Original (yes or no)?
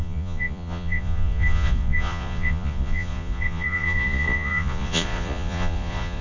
no